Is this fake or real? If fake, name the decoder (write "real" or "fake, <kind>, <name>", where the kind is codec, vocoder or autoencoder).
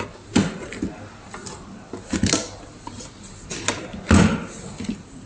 real